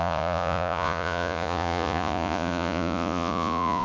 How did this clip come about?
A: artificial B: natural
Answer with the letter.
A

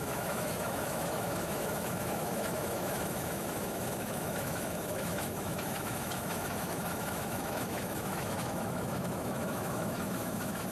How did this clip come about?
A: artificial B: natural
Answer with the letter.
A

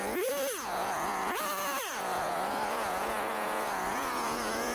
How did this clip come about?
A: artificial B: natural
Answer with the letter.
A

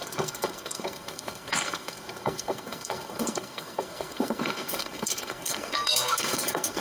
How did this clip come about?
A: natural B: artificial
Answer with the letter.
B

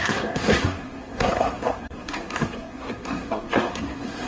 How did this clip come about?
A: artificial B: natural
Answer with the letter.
A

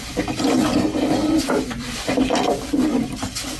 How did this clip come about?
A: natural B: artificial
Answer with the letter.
B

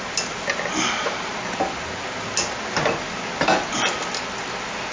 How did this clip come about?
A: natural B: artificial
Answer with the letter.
A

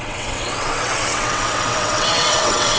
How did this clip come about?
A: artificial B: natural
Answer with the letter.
A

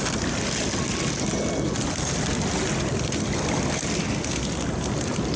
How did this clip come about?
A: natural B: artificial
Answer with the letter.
A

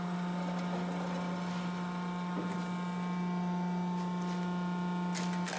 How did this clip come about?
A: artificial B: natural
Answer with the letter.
B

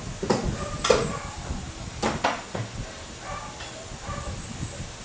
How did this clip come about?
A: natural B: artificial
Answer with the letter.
A